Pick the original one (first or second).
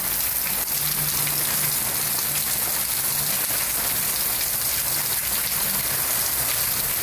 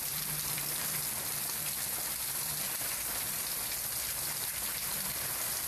first